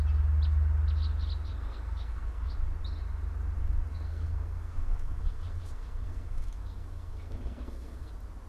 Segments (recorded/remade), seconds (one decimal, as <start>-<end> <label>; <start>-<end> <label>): 0.0-1.5 recorded; 1.5-2.5 remade; 2.5-3.9 recorded; 3.9-8.1 remade; 8.1-8.5 recorded